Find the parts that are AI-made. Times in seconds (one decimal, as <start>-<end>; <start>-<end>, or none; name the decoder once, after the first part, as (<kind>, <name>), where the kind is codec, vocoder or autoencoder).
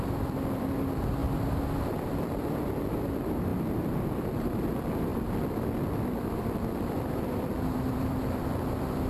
0.0-3.5 (vocoder, BigVGAN v2); 4.2-5.1; 5.9-9.1